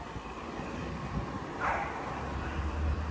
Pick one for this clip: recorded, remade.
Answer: recorded